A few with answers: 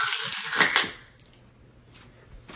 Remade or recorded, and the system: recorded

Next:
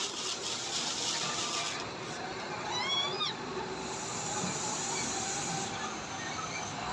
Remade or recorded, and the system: recorded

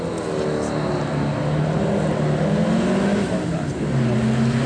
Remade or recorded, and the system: recorded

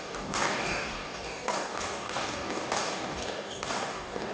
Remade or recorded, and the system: remade, codec, DAC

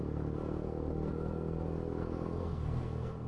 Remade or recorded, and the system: remade, codec, SNAC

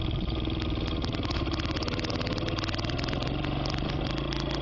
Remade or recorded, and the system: recorded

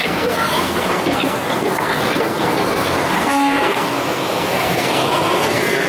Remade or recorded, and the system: remade, codec, SNAC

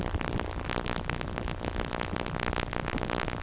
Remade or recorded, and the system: recorded